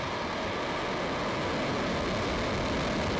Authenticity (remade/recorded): recorded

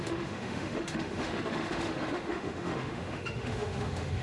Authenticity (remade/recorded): remade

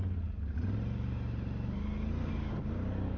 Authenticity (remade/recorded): recorded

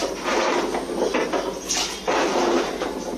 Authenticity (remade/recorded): recorded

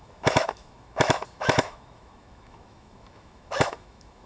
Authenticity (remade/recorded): remade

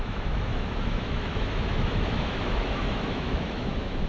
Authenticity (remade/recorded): remade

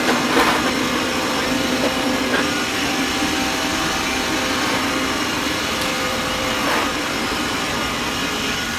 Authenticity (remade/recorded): recorded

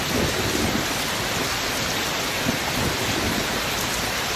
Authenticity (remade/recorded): recorded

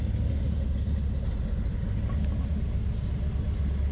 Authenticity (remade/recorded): recorded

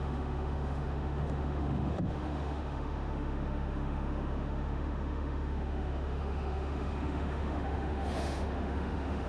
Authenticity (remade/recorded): remade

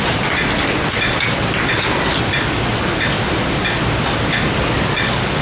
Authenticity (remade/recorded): recorded